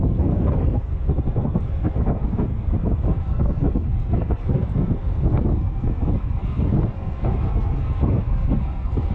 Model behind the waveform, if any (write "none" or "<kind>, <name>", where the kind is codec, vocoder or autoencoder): codec, SNAC